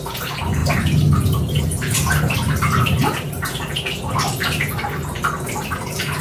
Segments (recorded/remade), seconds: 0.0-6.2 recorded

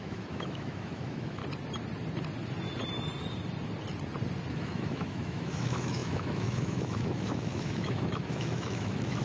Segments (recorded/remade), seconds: 0.0-1.4 remade; 1.4-4.5 recorded; 4.5-9.2 remade